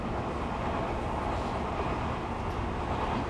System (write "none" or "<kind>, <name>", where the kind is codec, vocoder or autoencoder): none